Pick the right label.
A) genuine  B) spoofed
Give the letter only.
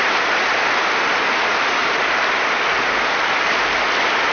A